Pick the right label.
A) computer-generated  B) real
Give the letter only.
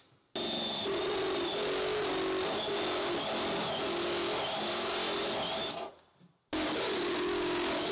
B